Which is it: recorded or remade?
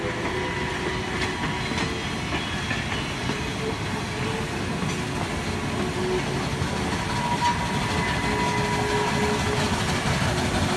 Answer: recorded